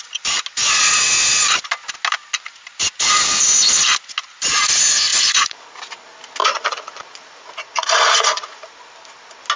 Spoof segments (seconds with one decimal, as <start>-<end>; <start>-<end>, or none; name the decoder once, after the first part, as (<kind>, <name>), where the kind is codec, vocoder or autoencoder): 0.6-1.4 (vocoder, Vocos); 5.1-5.8; 6.4-8.7